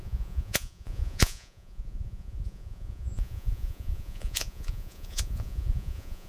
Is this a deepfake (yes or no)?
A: yes